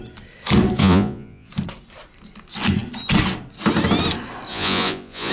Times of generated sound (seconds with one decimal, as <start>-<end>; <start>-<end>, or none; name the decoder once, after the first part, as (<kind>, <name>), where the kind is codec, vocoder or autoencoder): 0.8-1.5 (vocoder, Vocos); 4.5-5.3